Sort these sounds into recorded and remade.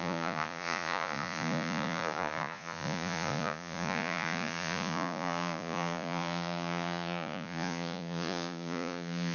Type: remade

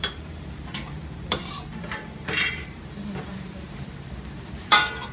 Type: remade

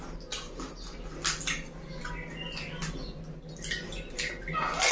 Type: recorded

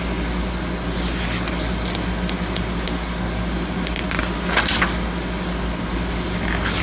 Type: recorded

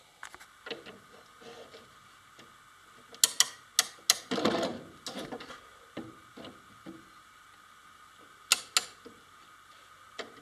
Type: recorded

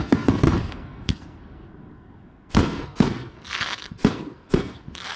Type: remade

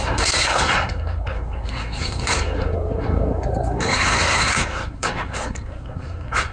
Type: remade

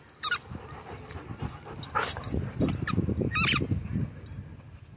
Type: recorded